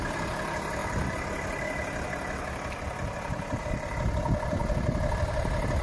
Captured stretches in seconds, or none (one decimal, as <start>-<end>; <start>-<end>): 0.0-0.8; 3.6-5.8